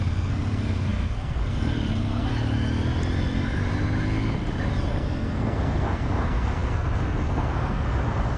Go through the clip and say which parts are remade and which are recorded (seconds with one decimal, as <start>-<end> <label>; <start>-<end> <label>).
0.0-2.3 remade; 2.3-4.9 recorded; 4.9-8.4 remade